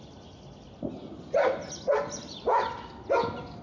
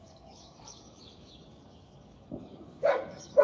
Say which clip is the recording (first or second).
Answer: first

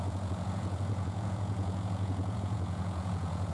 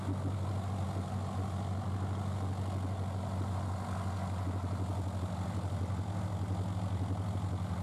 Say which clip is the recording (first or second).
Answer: second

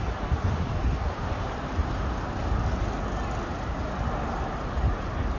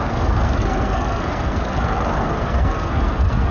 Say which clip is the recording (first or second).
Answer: first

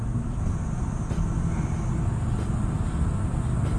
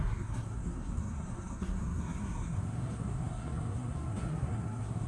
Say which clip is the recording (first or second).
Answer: first